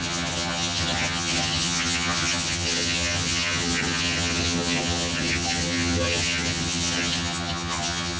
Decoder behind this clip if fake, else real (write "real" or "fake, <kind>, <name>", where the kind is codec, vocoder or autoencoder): fake, vocoder, HiFi-GAN